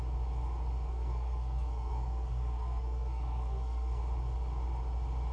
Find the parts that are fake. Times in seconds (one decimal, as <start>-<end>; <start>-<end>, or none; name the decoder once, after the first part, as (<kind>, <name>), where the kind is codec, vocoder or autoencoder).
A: 0.9-4.0 (codec, SNAC)